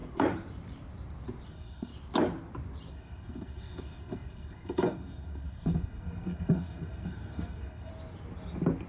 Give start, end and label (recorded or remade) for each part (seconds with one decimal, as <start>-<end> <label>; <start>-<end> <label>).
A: 0.0-1.5 recorded; 1.5-1.9 remade; 1.9-2.9 recorded; 2.9-7.9 remade; 7.9-8.9 recorded